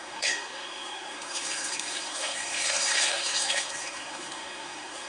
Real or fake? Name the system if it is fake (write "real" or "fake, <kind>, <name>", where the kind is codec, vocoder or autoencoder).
fake, codec, SNAC